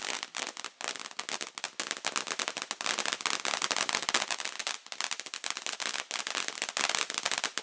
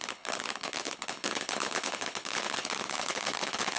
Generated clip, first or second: second